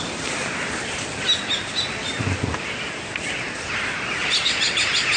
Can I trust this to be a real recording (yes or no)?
yes